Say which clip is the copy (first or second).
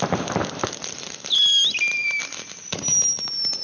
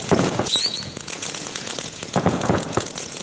second